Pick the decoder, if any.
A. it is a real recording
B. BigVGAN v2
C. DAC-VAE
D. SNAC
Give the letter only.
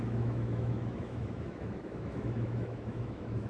C